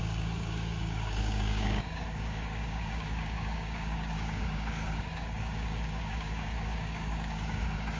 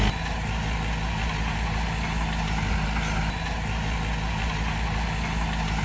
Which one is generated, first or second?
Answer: first